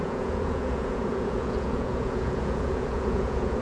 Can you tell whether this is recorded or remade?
remade